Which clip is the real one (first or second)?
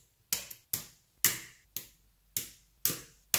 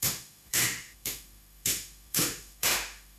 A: first